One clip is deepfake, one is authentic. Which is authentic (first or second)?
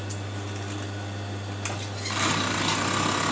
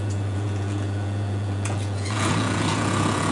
first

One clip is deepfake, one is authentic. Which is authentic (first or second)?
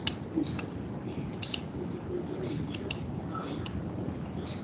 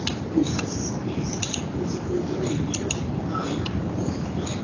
first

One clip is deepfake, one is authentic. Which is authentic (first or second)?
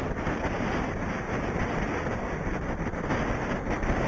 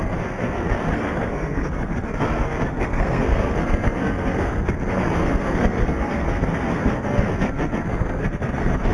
first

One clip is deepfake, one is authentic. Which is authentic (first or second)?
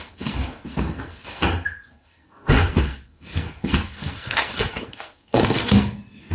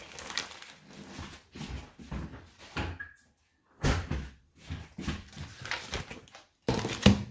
second